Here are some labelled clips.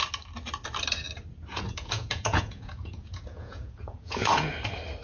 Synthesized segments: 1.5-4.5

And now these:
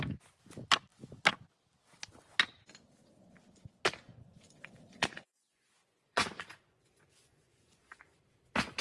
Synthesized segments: 4.1-8.2

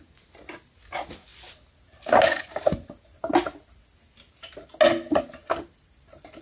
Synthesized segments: 5.4-6.4

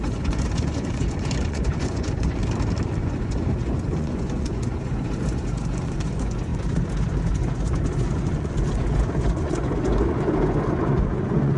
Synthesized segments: 0.0-2.4; 3.0-11.6

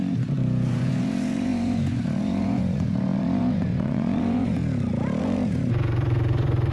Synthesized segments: 0.0-4.6; 5.2-6.7

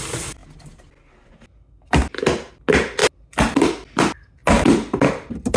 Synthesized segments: none

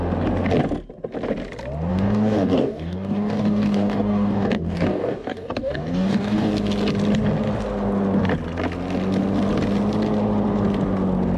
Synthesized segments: 1.9-6.5